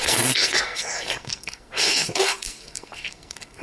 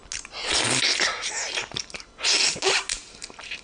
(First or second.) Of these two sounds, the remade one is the first